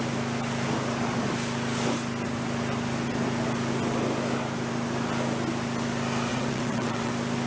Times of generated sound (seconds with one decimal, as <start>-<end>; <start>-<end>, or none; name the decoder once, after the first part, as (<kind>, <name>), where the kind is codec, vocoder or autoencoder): 6.3-7.1 (vocoder, WaveNeXt)